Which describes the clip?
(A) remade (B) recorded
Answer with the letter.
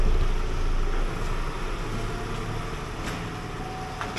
B